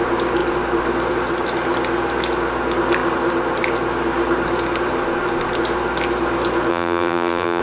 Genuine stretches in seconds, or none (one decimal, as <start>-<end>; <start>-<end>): 0.0-6.7